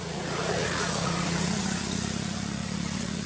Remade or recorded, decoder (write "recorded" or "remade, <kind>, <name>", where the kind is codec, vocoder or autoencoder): remade, vocoder, Vocos